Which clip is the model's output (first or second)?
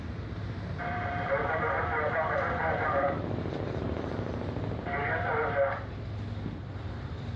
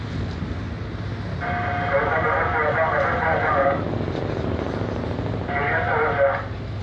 first